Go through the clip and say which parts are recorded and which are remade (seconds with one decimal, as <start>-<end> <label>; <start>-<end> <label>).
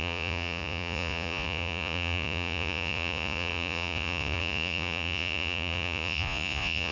0.0-6.9 remade